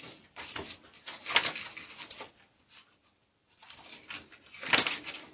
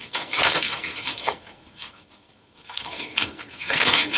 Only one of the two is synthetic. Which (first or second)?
second